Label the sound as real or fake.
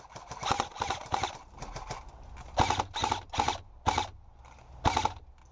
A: real